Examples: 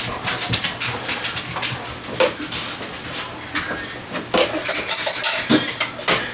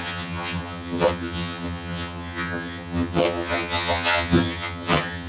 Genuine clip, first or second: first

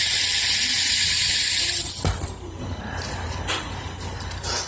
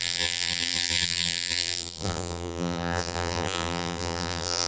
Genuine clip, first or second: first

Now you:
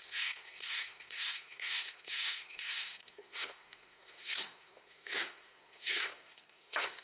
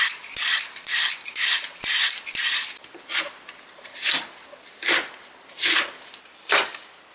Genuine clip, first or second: second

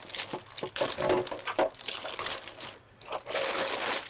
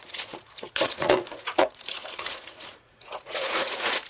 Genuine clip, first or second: first